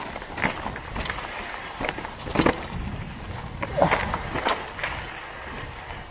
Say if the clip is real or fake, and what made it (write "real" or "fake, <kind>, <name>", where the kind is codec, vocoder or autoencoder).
real